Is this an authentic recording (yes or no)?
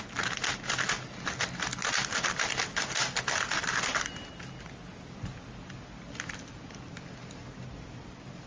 yes